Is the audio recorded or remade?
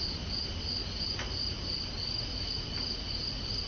recorded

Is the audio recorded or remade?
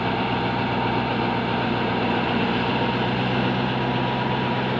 recorded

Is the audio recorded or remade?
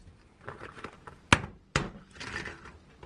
recorded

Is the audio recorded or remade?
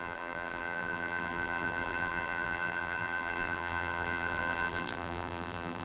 remade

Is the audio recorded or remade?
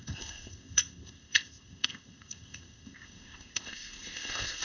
remade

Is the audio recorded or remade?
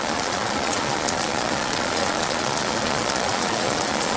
remade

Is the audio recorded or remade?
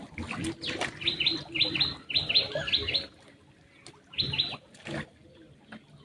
recorded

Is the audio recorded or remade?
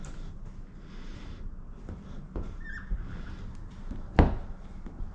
recorded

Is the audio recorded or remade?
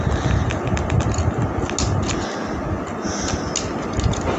recorded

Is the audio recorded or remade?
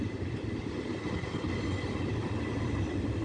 recorded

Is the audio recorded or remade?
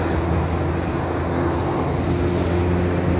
recorded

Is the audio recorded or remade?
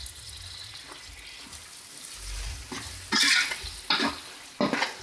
recorded